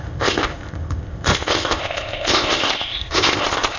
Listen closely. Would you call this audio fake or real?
fake